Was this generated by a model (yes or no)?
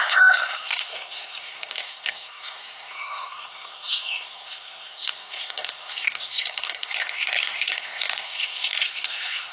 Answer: yes